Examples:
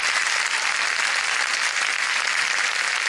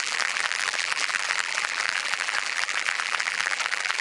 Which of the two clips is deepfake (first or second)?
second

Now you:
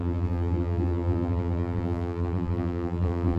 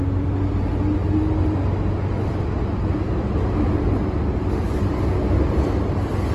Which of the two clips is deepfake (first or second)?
first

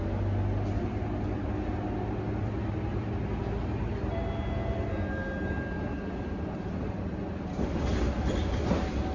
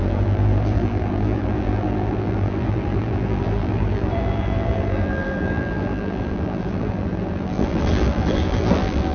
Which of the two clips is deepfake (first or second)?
second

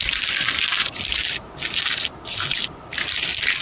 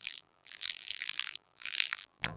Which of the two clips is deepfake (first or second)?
second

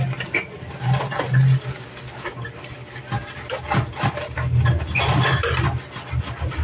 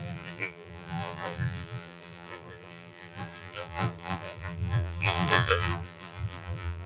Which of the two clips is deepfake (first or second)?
second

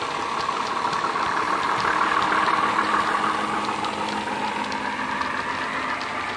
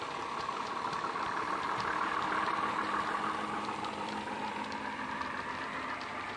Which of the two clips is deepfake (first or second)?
second